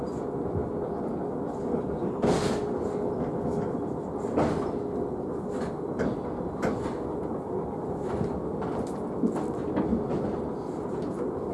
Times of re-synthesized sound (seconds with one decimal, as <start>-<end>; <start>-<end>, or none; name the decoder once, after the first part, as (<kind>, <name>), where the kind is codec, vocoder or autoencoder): none